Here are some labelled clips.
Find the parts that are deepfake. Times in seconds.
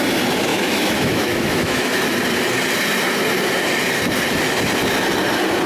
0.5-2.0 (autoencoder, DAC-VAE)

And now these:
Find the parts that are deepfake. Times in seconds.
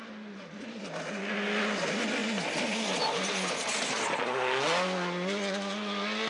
none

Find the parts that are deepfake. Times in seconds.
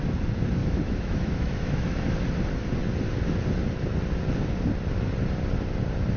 0.6-2.2 (autoencoder, DAC-VAE)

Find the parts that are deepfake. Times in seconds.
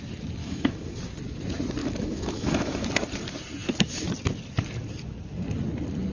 0.4-1.0 (autoencoder, DAC-VAE); 1.8-2.9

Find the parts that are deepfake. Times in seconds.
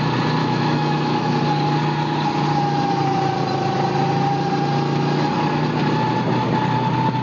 0.4-1.4 (autoencoder, DAC-VAE)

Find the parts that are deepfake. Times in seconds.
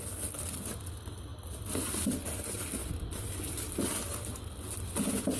none